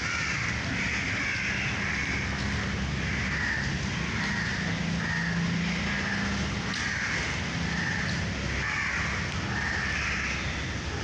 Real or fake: real